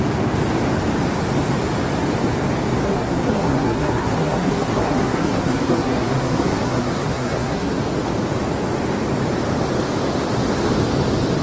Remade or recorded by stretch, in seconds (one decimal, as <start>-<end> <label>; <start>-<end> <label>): 0.0-2.8 recorded; 2.8-7.7 remade; 7.7-11.4 recorded